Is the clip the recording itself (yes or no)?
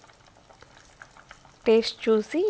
yes